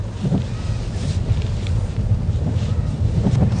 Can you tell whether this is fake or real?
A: fake